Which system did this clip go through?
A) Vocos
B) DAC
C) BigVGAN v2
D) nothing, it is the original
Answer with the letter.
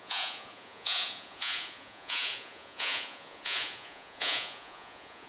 A